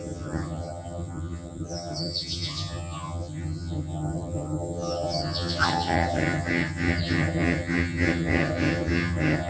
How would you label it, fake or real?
fake